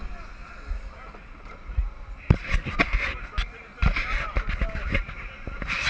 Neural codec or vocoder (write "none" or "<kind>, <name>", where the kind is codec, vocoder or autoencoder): none